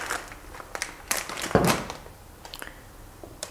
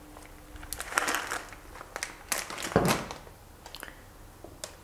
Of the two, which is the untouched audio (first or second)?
second